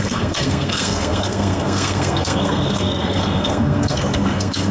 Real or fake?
fake